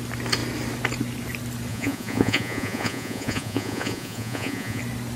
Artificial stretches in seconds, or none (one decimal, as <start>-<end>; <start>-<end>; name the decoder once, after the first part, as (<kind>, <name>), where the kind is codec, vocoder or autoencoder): 1.7-4.8 (vocoder, Vocos)